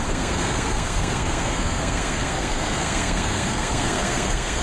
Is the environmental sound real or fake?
fake